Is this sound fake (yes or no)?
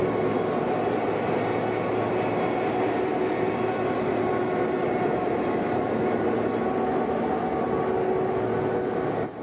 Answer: no